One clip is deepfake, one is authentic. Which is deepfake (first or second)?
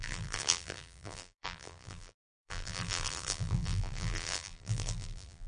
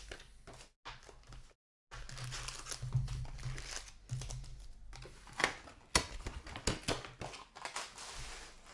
first